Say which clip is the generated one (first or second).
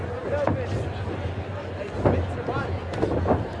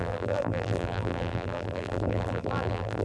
second